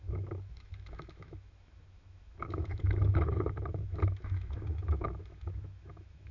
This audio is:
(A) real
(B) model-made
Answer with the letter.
B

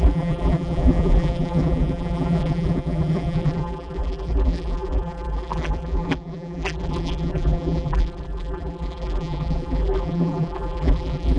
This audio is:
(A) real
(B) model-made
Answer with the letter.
B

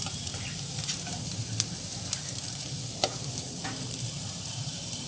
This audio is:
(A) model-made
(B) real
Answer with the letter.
A